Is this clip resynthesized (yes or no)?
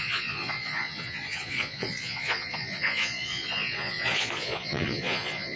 yes